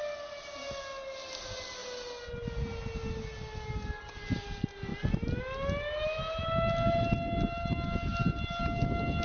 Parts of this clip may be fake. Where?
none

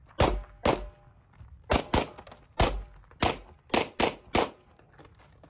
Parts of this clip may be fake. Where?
none

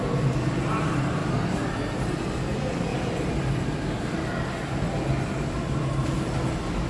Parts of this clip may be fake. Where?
none

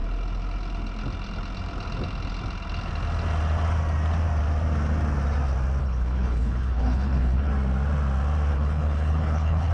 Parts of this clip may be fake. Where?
5.8-7.5; 8.5-9.7

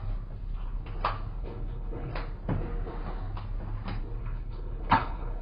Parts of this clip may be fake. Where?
1.4-2.1; 4.2-5.4

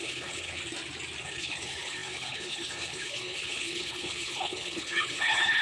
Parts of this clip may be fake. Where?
0.0-0.6; 1.2-5.6

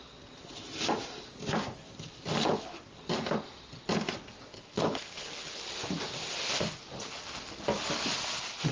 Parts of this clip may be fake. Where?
4.5-5.6

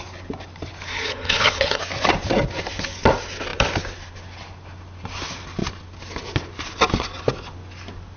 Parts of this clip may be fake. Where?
0.9-1.8